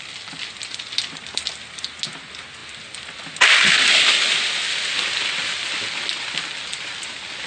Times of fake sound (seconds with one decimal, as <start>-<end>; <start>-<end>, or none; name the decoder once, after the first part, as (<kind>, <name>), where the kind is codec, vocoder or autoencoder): none